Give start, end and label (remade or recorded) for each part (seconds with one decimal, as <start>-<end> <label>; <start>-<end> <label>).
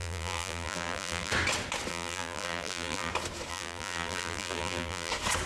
0.0-1.3 remade; 1.3-1.9 recorded; 1.9-3.1 remade; 3.1-3.5 recorded; 3.5-5.1 remade; 5.1-5.5 recorded